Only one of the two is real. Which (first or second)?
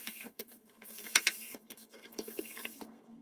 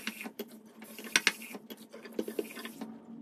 second